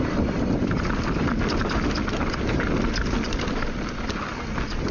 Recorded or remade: recorded